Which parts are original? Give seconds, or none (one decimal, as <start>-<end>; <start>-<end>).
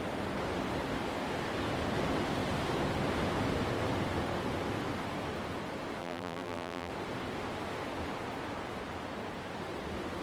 0.0-6.0; 6.9-10.2